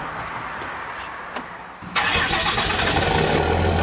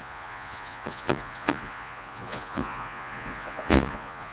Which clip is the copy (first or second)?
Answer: second